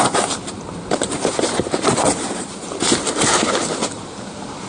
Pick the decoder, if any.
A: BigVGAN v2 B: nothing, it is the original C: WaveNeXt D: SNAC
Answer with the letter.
B